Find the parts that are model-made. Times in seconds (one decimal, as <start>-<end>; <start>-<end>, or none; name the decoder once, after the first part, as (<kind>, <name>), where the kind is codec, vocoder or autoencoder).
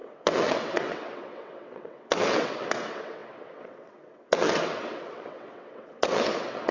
0.0-6.7 (vocoder, WaveNeXt)